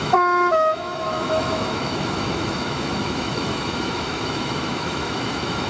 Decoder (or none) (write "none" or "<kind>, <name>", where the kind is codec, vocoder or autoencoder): autoencoder, DAC-VAE